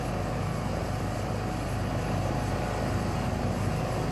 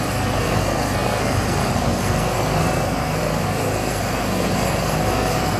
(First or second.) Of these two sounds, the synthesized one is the second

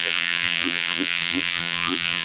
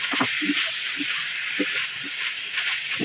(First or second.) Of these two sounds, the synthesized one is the first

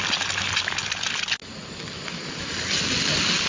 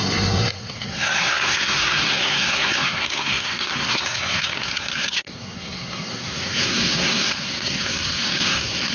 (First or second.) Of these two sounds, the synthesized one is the second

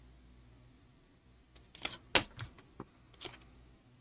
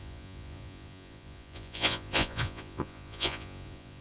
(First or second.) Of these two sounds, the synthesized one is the second